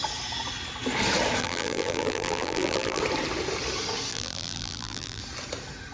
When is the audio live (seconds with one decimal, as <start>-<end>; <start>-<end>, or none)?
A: 0.0-1.4; 3.0-4.1; 5.2-5.9